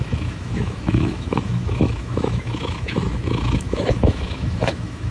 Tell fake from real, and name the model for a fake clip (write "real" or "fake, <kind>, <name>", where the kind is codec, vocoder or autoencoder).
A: fake, autoencoder, DAC-VAE